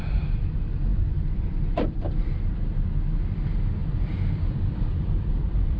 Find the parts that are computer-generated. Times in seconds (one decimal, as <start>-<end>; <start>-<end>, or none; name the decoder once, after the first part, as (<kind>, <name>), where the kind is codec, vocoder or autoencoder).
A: 0.9-2.4 (vocoder, BigVGAN v2); 3.8-5.8